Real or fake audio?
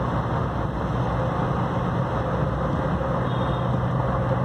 real